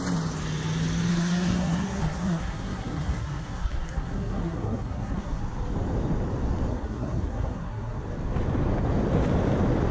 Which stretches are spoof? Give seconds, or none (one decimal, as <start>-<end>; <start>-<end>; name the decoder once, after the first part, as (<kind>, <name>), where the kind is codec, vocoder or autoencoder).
1.1-5.4 (codec, SNAC); 6.7-8.0